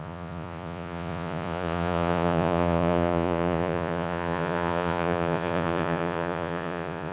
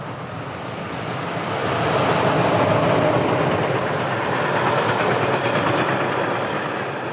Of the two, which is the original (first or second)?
second